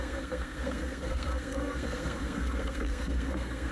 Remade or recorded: remade